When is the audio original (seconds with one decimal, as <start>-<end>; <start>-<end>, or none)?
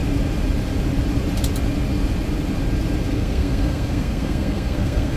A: 0.0-3.1